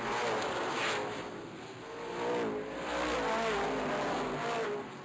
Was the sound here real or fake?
real